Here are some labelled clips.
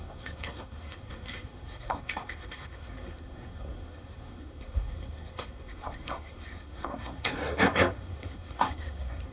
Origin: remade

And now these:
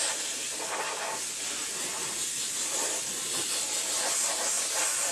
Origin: recorded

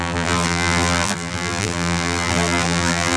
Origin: remade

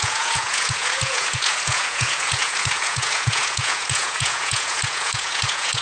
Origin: remade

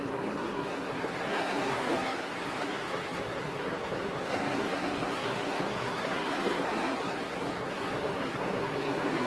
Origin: remade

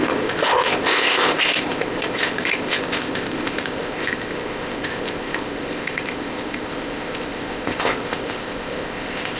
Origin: remade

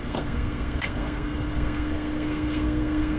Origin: remade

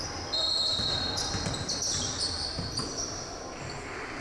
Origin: recorded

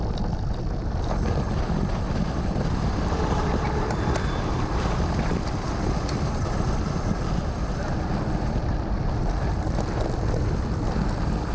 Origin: remade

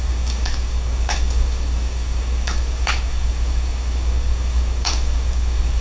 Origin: remade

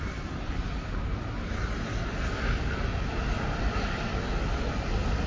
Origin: recorded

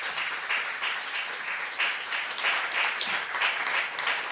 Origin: recorded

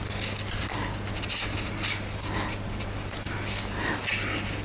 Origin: recorded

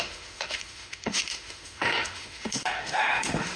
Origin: remade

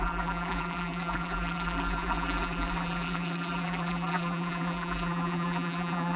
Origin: remade